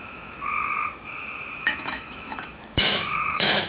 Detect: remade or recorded remade